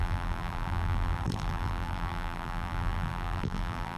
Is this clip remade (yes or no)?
yes